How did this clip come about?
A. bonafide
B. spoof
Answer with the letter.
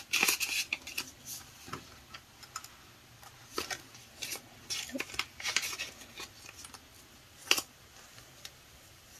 A